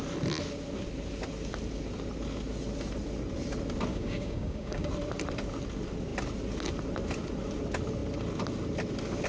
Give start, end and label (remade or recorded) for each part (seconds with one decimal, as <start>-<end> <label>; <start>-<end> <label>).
0.0-3.9 recorded; 3.9-4.9 remade; 4.9-9.3 recorded